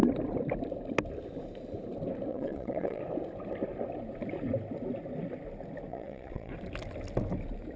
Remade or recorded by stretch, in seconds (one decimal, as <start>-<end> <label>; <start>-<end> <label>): 0.0-2.3 recorded; 2.3-3.0 remade; 3.0-5.9 recorded; 5.9-6.5 remade; 6.5-7.8 recorded